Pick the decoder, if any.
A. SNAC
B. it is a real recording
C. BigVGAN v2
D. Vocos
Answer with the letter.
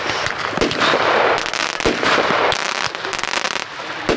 B